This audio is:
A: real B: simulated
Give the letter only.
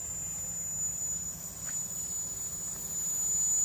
A